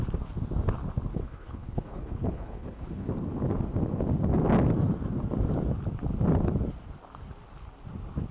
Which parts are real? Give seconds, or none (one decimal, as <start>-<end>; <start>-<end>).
0.0-1.1; 3.1-8.3